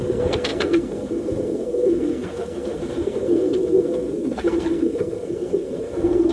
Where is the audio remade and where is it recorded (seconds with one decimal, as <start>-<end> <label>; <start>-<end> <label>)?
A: 0.0-6.3 remade